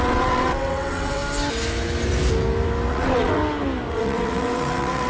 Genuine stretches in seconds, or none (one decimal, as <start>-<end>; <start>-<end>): 1.2-2.9; 3.4-3.9